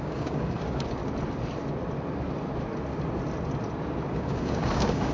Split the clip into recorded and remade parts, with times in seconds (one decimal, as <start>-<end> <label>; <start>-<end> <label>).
0.0-1.0 remade; 1.0-4.1 recorded; 4.1-5.1 remade